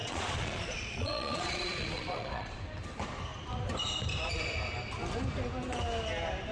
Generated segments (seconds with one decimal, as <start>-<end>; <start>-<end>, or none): 0.0-2.6